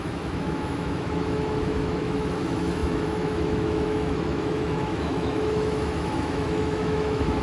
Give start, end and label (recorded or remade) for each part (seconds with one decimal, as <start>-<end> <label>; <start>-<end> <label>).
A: 0.0-7.4 remade